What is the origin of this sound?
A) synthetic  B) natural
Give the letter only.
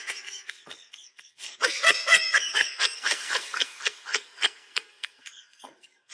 A